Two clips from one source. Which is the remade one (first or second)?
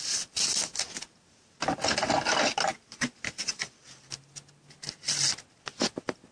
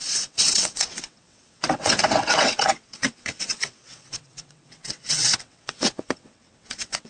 second